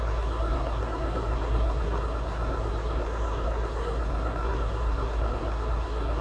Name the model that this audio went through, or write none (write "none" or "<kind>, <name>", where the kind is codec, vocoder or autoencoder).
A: codec, SNAC